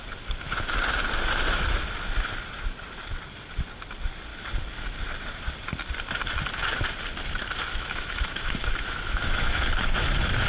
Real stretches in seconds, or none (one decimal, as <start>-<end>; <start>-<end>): 0.0-7.7; 9.6-10.5